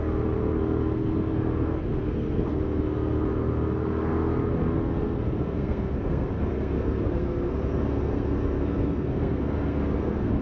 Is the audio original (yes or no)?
no